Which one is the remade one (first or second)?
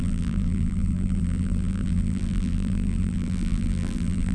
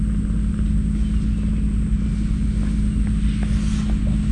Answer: first